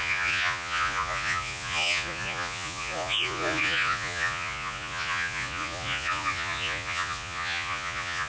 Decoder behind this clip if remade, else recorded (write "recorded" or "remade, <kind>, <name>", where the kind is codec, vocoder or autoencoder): remade, vocoder, Vocos